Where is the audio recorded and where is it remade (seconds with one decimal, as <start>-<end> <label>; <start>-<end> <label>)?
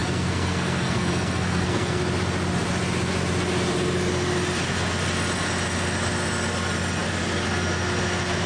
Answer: 0.0-2.0 remade; 2.0-8.5 recorded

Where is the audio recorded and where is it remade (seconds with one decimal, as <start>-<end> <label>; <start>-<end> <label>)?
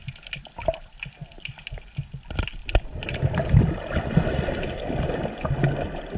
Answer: 0.0-6.2 recorded